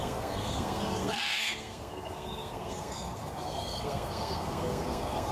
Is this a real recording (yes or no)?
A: no